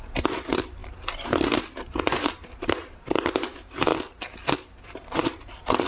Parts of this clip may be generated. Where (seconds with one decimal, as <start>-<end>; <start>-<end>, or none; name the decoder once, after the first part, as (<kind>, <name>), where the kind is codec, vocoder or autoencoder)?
0.0-3.9 (vocoder, BigVGAN v2); 4.8-5.9

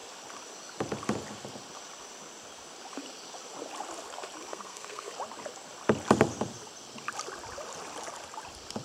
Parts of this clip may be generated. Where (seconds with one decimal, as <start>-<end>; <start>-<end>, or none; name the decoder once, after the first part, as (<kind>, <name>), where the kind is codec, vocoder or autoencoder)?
4.5-5.1 (codec, SNAC)

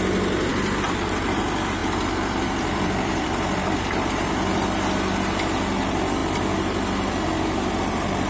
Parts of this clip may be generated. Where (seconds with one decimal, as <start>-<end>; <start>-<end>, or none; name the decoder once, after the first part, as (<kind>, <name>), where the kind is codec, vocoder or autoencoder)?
0.5-1.4 (vocoder, BigVGAN v2); 1.8-4.3

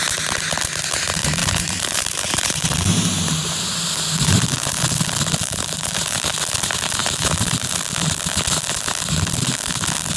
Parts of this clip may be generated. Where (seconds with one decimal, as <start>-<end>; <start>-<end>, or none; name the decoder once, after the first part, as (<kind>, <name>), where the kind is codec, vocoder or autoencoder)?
1.4-5.0 (vocoder, BigVGAN v2); 5.4-6.3; 7.0-7.8

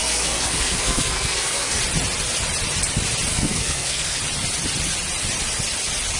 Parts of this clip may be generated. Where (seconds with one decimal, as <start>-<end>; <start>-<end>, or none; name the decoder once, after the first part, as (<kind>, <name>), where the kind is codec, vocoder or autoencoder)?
0.0-1.8 (codec, SNAC); 3.3-4.2